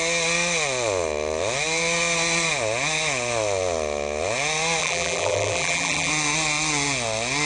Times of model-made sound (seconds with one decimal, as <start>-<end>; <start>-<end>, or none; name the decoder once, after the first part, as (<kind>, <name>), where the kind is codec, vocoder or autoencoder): 4.8-6.1 (vocoder, BigVGAN v2)